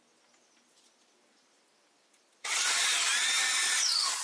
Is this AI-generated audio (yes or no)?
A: no